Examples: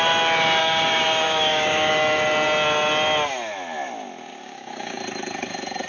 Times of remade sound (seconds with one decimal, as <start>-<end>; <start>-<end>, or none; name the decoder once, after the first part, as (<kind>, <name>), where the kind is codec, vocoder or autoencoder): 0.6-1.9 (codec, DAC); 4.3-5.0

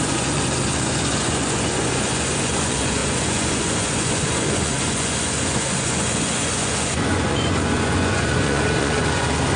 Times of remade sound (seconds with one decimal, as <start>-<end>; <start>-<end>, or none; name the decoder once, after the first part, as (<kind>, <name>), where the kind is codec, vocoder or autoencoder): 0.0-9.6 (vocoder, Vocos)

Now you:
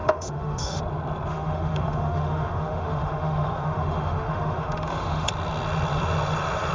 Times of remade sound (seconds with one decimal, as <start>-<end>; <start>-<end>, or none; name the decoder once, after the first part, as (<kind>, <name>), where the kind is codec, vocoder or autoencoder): 0.0-0.8 (autoencoder, DAC-VAE); 1.3-5.3

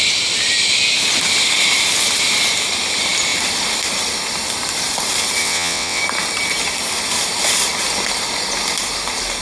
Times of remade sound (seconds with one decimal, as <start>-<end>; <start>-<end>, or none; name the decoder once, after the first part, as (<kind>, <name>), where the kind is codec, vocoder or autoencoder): 5.4-6.0 (vocoder, WaveNeXt)

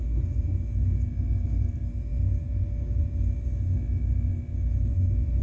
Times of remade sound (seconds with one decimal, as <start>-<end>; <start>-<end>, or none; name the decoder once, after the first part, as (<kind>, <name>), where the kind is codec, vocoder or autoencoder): none

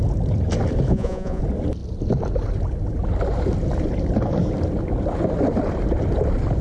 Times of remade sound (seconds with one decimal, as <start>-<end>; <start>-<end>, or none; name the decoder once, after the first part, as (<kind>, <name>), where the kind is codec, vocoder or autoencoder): 0.9-1.4 (vocoder, Vocos)